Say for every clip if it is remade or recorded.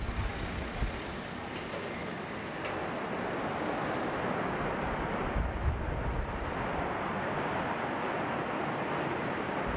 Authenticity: recorded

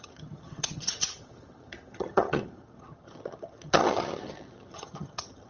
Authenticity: remade